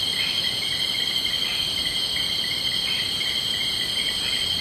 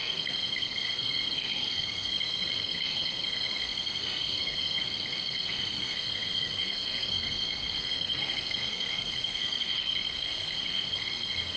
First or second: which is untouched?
first